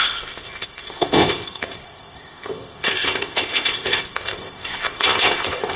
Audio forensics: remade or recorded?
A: remade